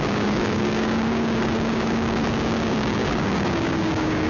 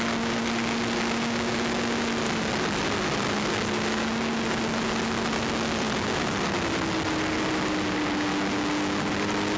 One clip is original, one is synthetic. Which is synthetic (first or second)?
first